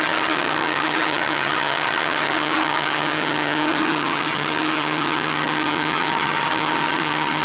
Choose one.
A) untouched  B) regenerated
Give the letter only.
B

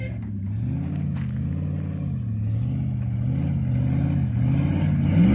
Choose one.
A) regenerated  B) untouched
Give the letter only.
B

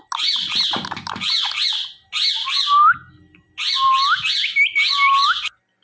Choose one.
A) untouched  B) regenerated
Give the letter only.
A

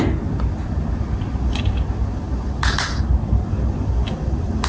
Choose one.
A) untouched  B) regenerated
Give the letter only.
A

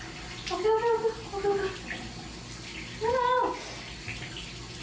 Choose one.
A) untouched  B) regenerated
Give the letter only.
A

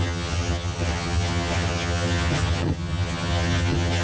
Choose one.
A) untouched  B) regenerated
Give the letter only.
B